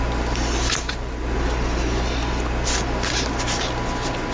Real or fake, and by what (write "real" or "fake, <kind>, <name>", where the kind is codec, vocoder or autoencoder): real